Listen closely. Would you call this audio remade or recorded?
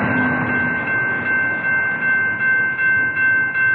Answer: recorded